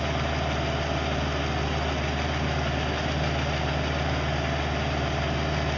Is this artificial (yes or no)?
no